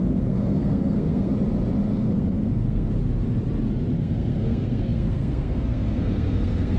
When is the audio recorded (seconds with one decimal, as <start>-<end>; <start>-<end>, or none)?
1.3-1.9; 3.0-4.0